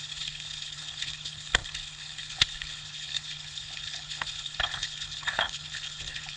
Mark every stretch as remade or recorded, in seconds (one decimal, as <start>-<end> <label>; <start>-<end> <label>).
0.0-6.4 remade